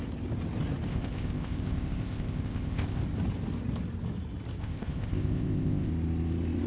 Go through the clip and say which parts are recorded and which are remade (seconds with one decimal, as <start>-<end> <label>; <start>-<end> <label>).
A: 0.0-0.9 recorded; 0.9-3.0 remade; 3.0-4.6 recorded; 4.6-5.9 remade; 5.9-6.7 recorded